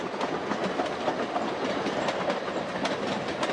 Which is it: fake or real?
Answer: real